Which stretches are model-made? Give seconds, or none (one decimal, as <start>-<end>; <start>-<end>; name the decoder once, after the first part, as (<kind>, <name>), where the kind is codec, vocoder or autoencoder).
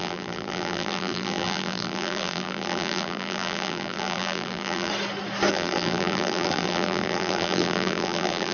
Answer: 0.0-4.9 (vocoder, BigVGAN v2); 5.5-8.5